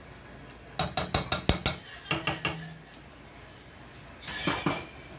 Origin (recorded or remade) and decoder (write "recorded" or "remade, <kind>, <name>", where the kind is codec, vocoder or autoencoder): recorded